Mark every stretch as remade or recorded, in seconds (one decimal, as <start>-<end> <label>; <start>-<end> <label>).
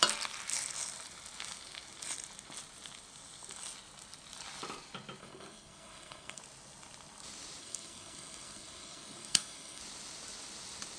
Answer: 0.0-5.2 recorded; 5.2-6.4 remade; 6.4-7.6 recorded; 7.6-9.8 remade; 9.8-11.0 recorded